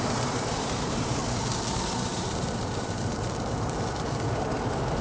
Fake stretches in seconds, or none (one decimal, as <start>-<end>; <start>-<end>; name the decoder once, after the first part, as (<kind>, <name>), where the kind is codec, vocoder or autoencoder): 0.0-1.2 (vocoder, BigVGAN v2); 1.7-5.0